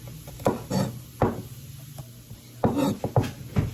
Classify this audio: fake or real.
real